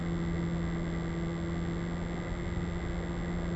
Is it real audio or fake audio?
real